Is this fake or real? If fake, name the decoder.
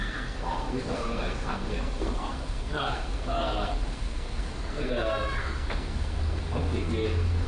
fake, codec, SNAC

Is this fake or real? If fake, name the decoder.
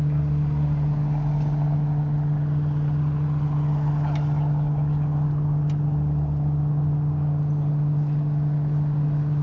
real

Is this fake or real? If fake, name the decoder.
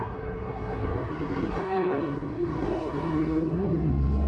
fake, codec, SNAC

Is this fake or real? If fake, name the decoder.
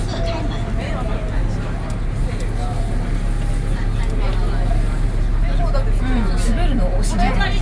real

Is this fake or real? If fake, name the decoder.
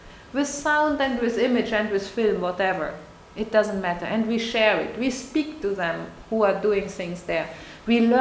real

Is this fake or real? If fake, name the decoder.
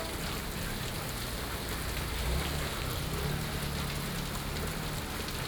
real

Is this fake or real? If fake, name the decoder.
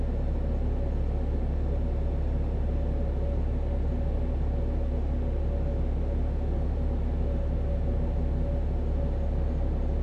real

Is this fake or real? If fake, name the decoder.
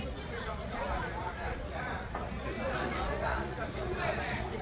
fake, vocoder, Vocos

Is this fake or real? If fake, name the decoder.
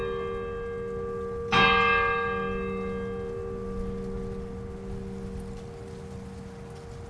real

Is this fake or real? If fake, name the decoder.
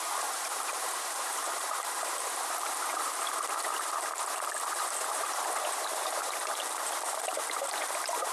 fake, vocoder, BigVGAN v2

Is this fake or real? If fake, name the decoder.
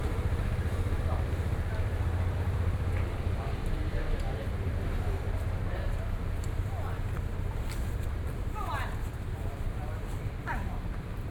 fake, vocoder, BigVGAN v2